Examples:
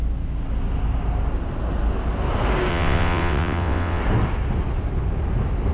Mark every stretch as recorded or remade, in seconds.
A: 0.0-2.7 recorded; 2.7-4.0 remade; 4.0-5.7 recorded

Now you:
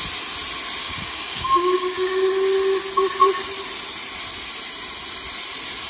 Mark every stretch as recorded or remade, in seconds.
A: 0.0-0.8 recorded; 0.8-2.3 remade; 2.3-5.9 recorded

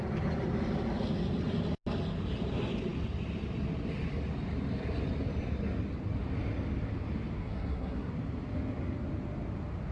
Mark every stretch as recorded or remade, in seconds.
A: 0.0-7.4 recorded; 7.4-8.1 remade; 8.1-9.9 recorded